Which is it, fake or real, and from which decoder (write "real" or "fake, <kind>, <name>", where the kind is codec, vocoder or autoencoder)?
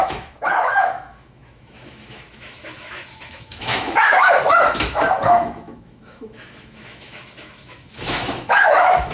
fake, autoencoder, DAC-VAE